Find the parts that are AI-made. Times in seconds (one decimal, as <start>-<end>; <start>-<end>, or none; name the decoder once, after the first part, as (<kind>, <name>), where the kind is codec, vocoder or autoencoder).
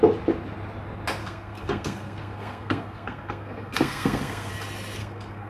1.2-4.5 (codec, SNAC); 5.0-5.5